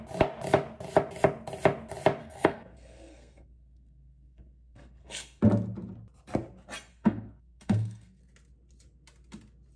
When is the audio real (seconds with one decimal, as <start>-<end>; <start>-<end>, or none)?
0.0-2.2; 5.4-6.9; 8.2-9.8

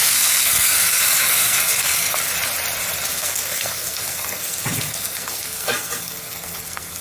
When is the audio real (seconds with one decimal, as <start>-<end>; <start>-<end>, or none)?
2.3-3.1

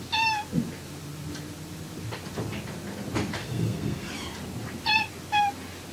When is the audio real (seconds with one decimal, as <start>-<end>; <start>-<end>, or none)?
0.0-3.4; 4.1-5.9

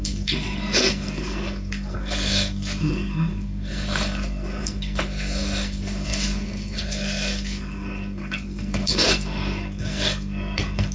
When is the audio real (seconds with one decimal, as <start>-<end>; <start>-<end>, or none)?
none

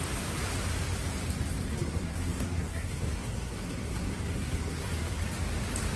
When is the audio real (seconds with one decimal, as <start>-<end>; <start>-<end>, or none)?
0.0-1.7; 5.2-6.0